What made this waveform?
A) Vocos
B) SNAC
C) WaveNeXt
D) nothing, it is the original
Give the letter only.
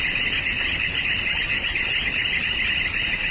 D